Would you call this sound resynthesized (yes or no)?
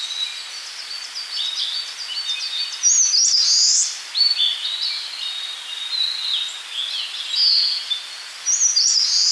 no